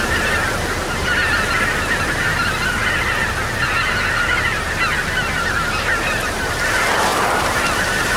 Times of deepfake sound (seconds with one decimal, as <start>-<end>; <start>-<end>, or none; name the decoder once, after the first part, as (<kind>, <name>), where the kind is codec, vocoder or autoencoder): 7.1-8.2 (vocoder, BigVGAN v2)